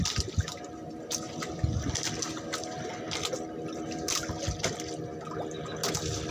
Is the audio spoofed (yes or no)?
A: no